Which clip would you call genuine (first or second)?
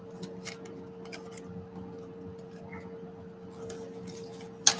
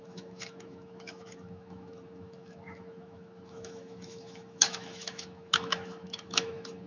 first